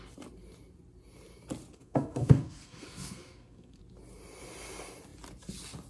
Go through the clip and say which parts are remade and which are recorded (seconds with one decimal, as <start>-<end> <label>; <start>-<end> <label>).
0.0-1.7 recorded; 1.7-3.8 remade; 3.8-5.9 recorded